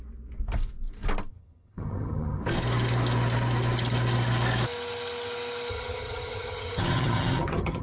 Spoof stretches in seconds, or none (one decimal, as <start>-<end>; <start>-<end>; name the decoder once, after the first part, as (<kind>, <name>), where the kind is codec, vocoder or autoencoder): 1.3-2.4 (vocoder, HiFi-GAN); 5.7-7.8